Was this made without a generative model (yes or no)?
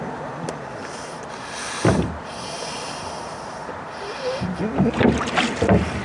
yes